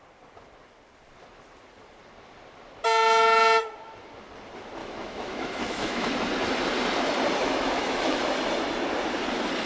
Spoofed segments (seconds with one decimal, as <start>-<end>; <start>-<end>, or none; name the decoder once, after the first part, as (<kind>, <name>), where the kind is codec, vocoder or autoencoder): 4.8-6.1 (autoencoder, DAC-VAE); 7.4-8.2